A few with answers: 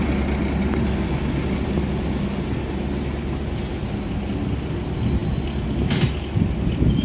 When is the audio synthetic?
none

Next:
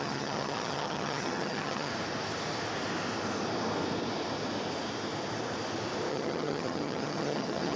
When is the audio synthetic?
0.0-1.9 (vocoder, HiFi-GAN); 6.1-7.8

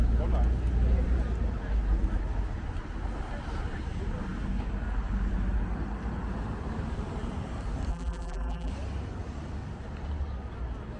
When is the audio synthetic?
7.9-8.7 (vocoder, BigVGAN v2)

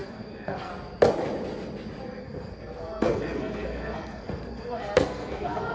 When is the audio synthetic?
0.0-0.7 (codec, SNAC); 2.2-5.7

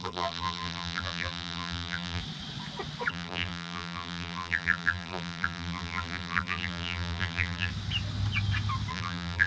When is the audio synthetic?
0.0-2.2 (vocoder, BigVGAN v2); 3.1-7.7; 8.9-9.5

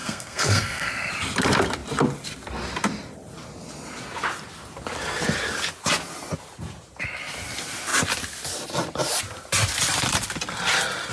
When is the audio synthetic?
0.0-1.1 (codec, SNAC)

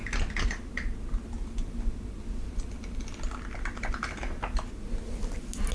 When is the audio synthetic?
none

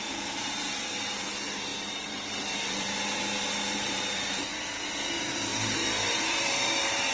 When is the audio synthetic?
0.0-7.1 (vocoder, BigVGAN v2)